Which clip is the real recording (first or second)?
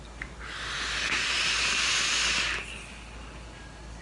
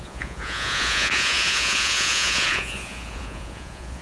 first